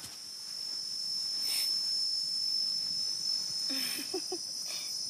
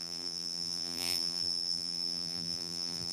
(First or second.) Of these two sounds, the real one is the first